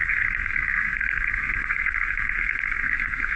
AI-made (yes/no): yes